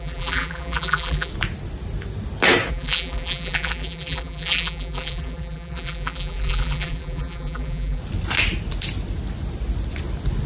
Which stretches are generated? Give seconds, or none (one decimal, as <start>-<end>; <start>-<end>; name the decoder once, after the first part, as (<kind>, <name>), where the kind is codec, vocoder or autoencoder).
0.0-1.3 (vocoder, BigVGAN v2); 2.7-8.0